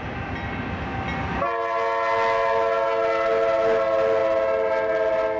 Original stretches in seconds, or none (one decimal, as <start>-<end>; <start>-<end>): 0.0-5.4